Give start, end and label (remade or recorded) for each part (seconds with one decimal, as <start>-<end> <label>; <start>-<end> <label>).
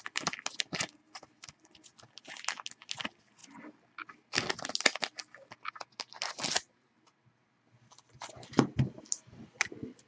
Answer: 0.0-10.1 recorded